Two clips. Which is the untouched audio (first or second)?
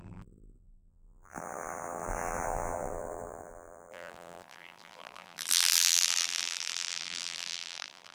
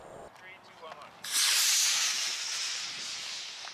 second